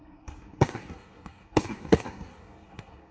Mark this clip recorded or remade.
remade